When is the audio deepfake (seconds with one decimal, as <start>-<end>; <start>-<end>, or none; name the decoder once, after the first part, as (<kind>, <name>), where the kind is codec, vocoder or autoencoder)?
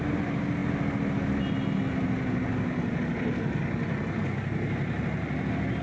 none